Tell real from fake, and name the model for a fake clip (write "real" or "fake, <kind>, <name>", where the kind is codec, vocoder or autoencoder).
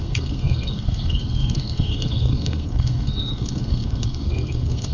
fake, codec, SNAC